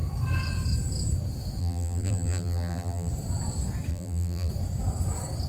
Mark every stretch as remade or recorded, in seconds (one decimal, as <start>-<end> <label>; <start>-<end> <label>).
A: 0.0-1.6 recorded; 1.6-3.1 remade; 3.1-3.9 recorded; 3.9-4.5 remade; 4.5-5.5 recorded